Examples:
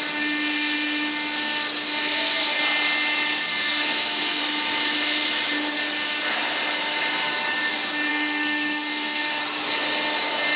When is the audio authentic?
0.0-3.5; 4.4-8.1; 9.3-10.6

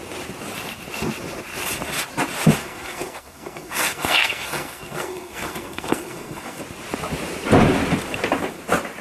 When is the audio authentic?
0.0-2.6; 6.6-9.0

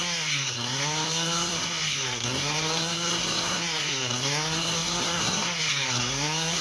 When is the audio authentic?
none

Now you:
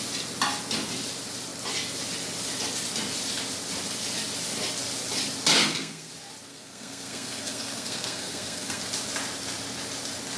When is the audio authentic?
0.0-5.6; 6.1-6.5; 8.8-10.4

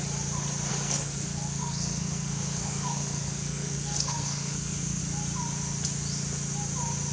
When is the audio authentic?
0.0-0.7; 5.0-7.1

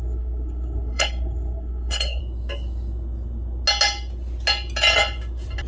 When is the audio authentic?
2.2-5.7

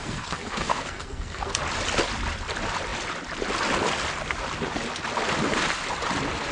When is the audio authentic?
1.6-6.5